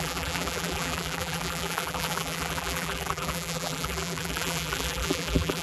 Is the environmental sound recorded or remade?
remade